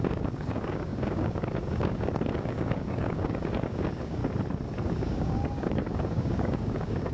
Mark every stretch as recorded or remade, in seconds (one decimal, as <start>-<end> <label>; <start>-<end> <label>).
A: 0.0-4.2 remade; 4.2-4.9 recorded; 4.9-7.1 remade